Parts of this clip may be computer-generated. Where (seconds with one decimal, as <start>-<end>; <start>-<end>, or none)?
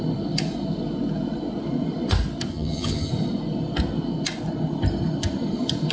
2.5-3.1